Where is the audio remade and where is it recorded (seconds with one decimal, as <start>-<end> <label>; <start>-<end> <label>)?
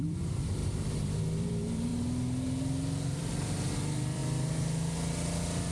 0.0-0.6 remade; 0.6-1.2 recorded; 1.2-1.9 remade; 1.9-3.2 recorded; 3.2-4.2 remade; 4.2-5.7 recorded